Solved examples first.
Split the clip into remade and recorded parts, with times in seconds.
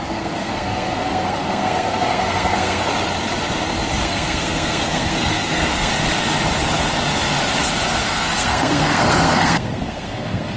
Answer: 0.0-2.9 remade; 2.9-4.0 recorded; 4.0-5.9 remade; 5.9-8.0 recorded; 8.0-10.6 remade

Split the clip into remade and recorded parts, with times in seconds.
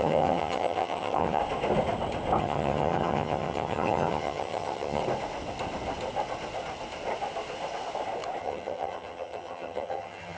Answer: 0.0-1.4 remade; 1.4-2.4 recorded; 2.4-5.0 remade; 5.0-8.4 recorded; 8.4-10.4 remade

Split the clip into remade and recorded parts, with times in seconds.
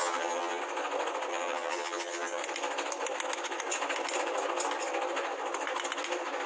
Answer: 0.0-0.6 remade; 0.6-1.3 recorded; 1.3-2.4 remade; 2.4-6.5 recorded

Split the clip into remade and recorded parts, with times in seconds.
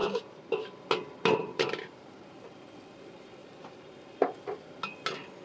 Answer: 0.0-0.8 remade; 0.8-1.4 recorded; 1.4-2.1 remade; 2.1-3.4 recorded; 3.4-3.9 remade; 3.9-5.4 recorded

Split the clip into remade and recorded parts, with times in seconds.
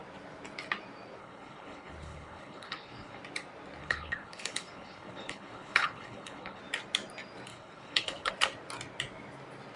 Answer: 0.0-1.2 recorded; 1.2-3.2 remade; 3.2-3.8 recorded; 3.8-6.6 remade; 6.6-7.5 recorded; 7.5-8.3 remade; 8.3-9.8 recorded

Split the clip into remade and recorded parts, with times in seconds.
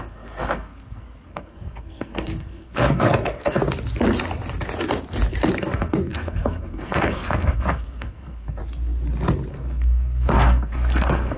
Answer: 0.0-3.6 remade; 3.6-5.6 recorded; 5.6-8.6 remade; 8.6-9.5 recorded; 9.5-11.4 remade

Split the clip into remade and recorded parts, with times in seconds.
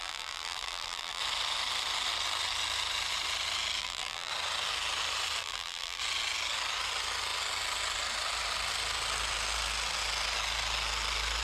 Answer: 0.0-1.2 remade; 1.2-3.8 recorded; 3.8-4.3 remade; 4.3-5.4 recorded; 5.4-6.0 remade; 6.0-11.4 recorded